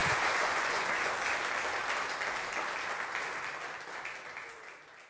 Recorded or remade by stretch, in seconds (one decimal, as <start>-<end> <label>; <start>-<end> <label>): 0.0-1.1 remade; 1.1-5.1 recorded